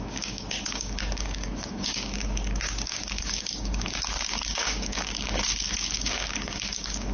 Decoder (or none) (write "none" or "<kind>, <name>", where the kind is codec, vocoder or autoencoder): codec, DAC